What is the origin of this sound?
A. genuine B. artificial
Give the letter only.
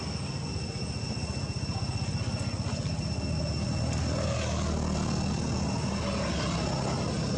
A